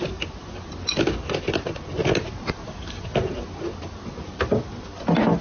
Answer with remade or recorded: recorded